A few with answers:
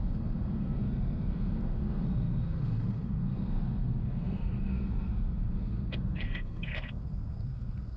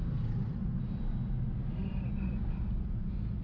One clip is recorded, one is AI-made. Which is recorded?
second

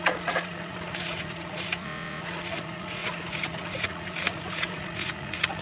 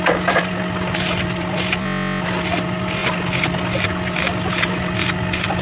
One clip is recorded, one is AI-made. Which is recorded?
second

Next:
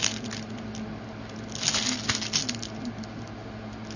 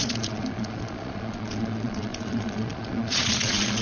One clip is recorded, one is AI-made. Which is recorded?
first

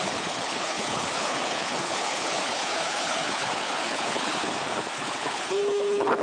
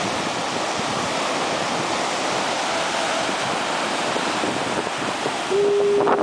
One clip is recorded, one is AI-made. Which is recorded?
second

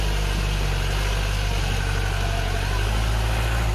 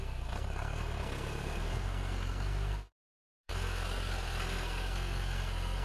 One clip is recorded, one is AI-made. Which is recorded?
first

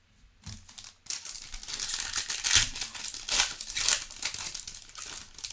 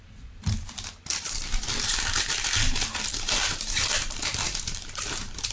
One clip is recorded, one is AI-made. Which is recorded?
first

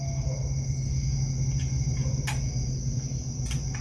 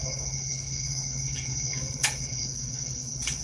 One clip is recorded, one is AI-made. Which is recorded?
first